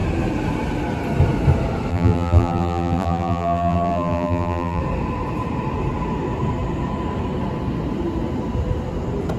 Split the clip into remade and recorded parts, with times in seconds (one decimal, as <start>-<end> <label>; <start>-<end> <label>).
0.0-1.9 recorded; 1.9-4.8 remade; 4.8-9.4 recorded